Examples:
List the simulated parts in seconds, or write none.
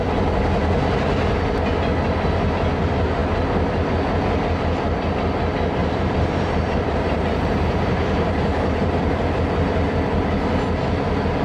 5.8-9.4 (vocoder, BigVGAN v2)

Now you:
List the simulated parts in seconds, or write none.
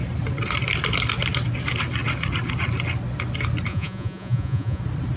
3.7-4.8 (vocoder, Vocos)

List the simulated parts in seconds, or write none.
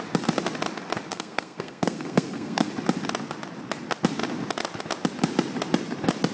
1.1-2.7 (codec, SNAC)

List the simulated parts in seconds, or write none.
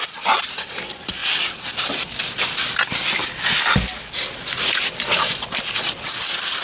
none